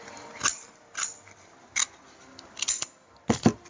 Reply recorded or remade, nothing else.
recorded